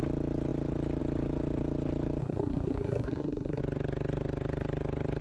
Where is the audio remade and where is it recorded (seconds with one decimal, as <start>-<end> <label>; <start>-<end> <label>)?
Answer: 0.0-2.2 recorded; 2.2-3.6 remade; 3.6-5.2 recorded